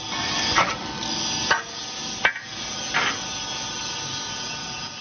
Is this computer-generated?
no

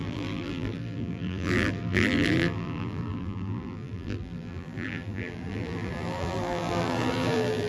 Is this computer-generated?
yes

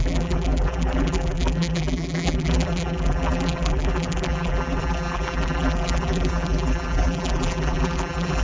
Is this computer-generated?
yes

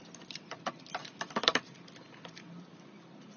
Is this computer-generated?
yes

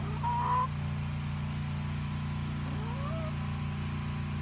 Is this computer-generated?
no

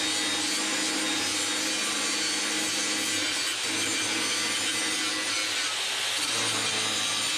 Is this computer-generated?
no